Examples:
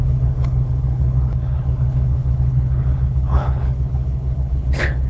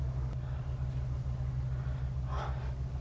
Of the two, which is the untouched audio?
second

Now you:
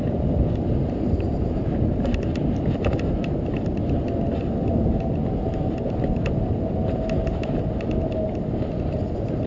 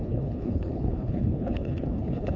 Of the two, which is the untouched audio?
first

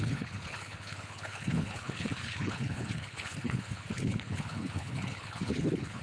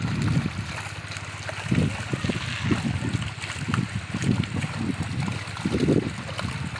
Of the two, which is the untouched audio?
second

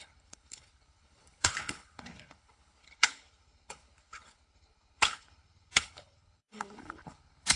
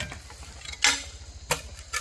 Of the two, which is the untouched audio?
second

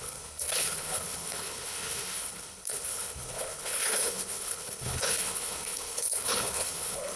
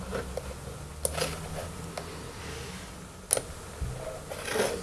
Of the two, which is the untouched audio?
second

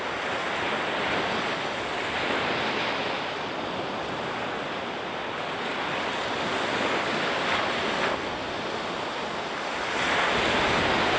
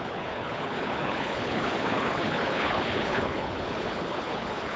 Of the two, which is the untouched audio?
first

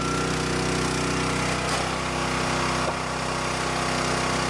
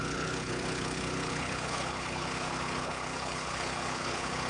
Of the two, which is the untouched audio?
first